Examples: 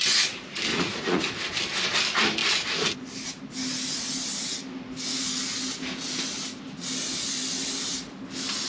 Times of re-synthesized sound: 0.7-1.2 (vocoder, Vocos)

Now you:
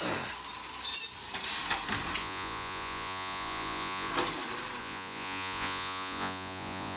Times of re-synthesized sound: 2.2-4.1 (vocoder, Vocos); 4.8-7.0

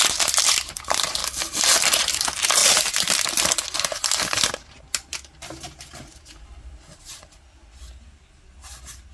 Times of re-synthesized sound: none